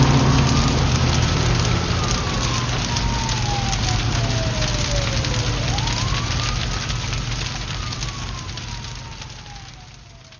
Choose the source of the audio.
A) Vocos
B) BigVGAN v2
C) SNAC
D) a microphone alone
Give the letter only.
D